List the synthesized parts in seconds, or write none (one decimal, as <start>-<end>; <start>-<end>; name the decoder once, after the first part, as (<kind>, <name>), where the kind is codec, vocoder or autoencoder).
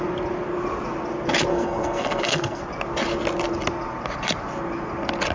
1.5-2.6 (codec, SNAC)